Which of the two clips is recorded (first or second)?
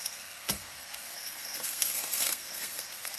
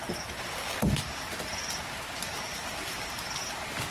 second